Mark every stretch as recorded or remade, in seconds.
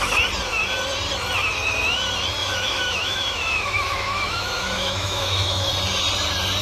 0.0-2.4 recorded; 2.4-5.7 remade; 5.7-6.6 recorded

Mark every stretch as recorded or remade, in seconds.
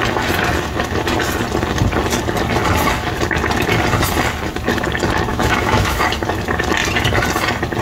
0.0-5.3 recorded; 5.3-6.0 remade; 6.0-7.8 recorded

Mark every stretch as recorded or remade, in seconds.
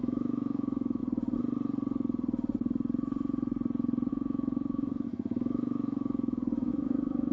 0.0-1.0 remade; 1.0-4.1 recorded; 4.1-7.3 remade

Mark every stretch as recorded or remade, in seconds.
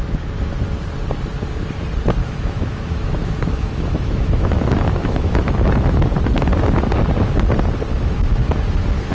0.0-2.2 recorded; 2.2-6.2 remade; 6.2-7.9 recorded; 7.9-8.6 remade; 8.6-9.1 recorded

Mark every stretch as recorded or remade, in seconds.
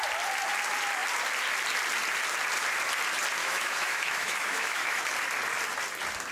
0.0-3.4 recorded; 3.4-5.0 remade; 5.0-6.3 recorded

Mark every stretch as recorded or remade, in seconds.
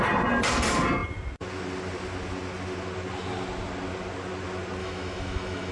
0.0-4.8 recorded; 4.8-5.7 remade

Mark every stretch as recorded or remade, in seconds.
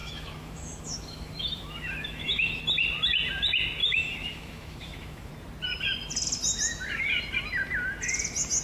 0.0-2.6 remade; 2.6-3.8 recorded; 3.8-5.3 remade; 5.3-8.6 recorded